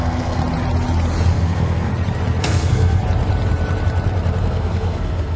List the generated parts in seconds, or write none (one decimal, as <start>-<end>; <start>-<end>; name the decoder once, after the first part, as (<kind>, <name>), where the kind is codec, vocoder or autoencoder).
0.0-0.4 (codec, SNAC); 1.3-1.9; 2.4-3.0; 4.4-5.4